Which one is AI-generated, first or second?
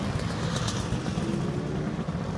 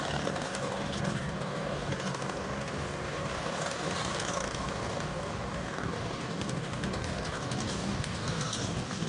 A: second